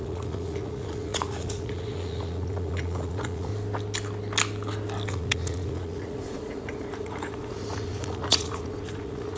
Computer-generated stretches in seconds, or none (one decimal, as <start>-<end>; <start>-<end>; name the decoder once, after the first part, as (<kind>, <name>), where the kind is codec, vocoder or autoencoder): 0.0-3.5 (vocoder, Vocos); 5.1-9.4